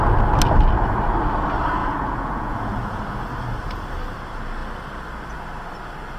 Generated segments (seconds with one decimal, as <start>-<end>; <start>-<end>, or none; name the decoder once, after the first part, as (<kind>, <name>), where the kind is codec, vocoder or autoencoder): 1.8-3.0 (vocoder, Vocos)

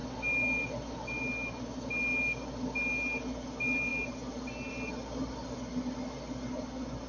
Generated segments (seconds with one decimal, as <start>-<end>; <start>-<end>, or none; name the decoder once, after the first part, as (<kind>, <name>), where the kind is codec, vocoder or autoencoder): none

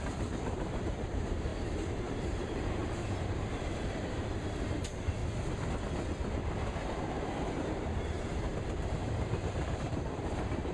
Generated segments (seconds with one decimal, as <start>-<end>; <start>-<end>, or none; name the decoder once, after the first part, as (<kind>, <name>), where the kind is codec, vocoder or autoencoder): 0.0-5.2 (vocoder, BigVGAN v2); 6.6-10.7

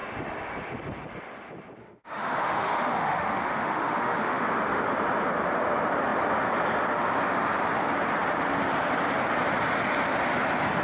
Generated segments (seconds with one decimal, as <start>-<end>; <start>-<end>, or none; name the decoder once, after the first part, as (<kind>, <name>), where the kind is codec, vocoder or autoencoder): 1.8-4.4 (autoencoder, DAC-VAE)

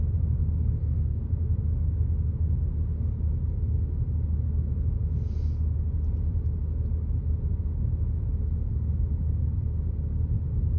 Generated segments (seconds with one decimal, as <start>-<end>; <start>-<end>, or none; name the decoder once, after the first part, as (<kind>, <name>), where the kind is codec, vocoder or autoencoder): 0.8-1.3 (codec, SNAC)